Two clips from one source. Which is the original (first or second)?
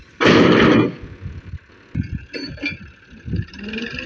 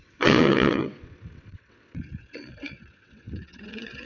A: first